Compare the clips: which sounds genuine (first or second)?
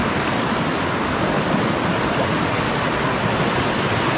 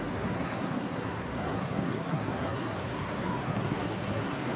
first